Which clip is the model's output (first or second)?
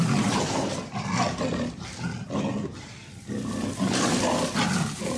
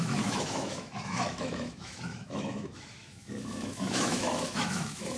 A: second